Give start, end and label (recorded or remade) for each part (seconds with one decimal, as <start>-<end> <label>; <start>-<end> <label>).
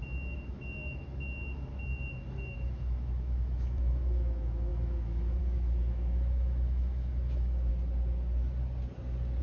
0.0-7.7 remade; 7.7-9.4 recorded